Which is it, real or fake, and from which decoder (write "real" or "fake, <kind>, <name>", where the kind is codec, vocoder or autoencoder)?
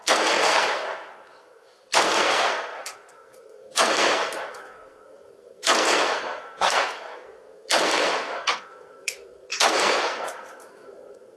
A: fake, codec, SNAC